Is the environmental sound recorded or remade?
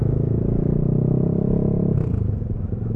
recorded